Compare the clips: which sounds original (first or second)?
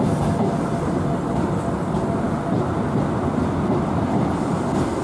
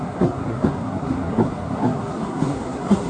first